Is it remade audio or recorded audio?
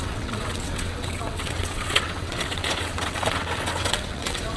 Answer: remade